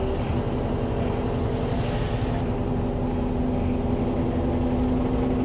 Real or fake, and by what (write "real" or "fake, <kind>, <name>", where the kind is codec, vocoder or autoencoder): real